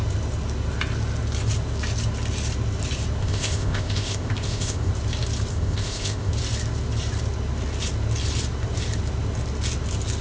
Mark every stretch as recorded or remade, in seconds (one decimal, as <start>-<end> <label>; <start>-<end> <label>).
0.0-3.2 recorded; 3.2-4.9 remade; 4.9-5.5 recorded; 5.5-6.3 remade; 6.3-10.2 recorded